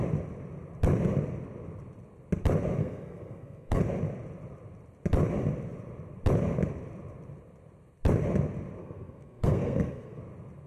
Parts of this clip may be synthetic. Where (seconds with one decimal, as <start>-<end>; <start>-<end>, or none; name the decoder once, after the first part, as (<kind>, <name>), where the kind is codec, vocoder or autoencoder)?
2.8-3.8 (codec, SNAC); 8.8-10.2